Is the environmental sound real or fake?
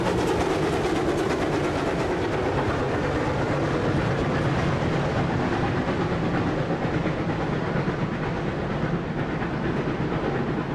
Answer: real